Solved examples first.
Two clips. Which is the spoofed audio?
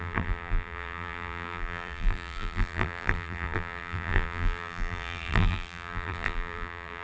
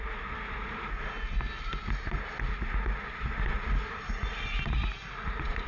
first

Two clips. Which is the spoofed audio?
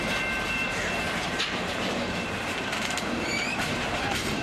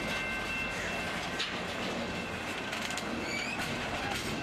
first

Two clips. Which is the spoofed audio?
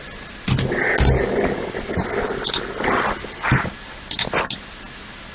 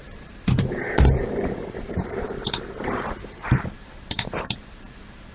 second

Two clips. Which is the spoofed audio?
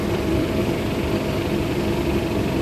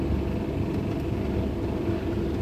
first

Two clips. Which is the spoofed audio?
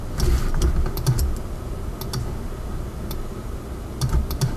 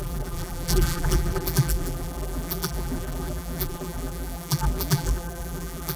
second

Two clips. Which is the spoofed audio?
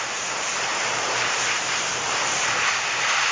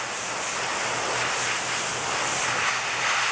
first